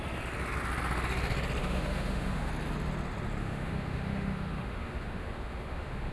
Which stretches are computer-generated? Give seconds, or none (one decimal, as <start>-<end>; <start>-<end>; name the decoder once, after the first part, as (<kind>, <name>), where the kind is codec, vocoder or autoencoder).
1.6-2.5 (autoencoder, DAC-VAE); 3.4-6.1